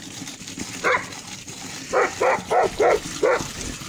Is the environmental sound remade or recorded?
recorded